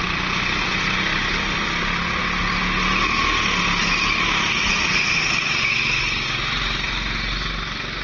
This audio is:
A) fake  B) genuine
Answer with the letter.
B